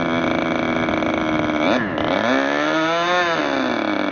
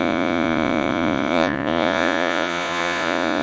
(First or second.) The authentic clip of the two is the first